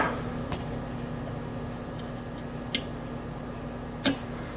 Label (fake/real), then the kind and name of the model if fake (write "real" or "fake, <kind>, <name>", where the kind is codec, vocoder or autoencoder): real